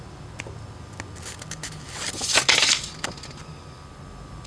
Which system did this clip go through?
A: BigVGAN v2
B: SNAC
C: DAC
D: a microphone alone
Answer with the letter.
D